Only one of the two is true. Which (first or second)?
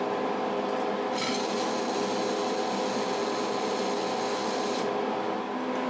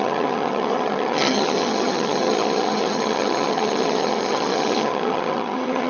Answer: first